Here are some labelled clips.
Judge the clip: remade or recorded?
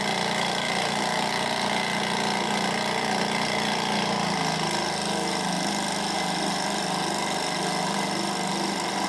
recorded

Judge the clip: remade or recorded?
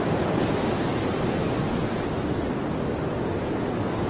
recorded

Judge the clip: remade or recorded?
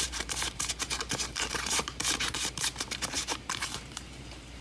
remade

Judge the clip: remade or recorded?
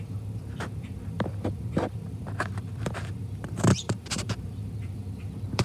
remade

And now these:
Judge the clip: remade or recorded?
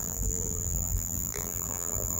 remade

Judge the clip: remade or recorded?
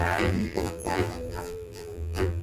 remade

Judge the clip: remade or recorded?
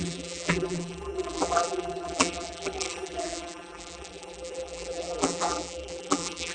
remade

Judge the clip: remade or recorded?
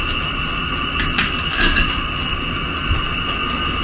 recorded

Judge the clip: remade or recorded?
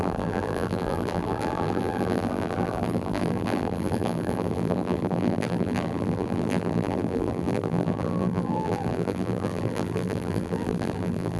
remade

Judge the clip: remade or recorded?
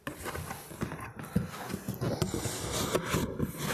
recorded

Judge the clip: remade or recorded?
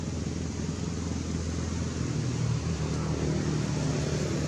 recorded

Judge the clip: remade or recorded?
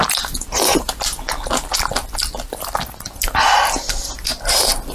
recorded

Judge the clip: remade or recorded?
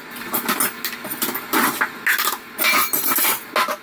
recorded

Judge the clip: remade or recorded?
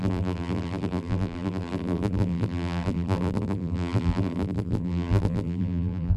remade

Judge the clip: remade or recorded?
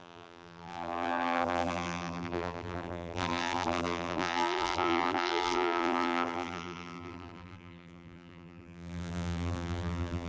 remade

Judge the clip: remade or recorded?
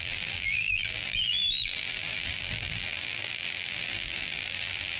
remade